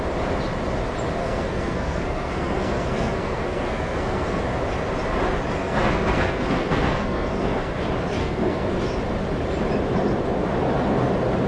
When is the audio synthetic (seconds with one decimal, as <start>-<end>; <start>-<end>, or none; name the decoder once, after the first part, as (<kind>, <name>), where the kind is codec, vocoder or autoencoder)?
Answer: 1.2-4.4 (codec, SNAC); 5.6-7.8; 8.2-8.7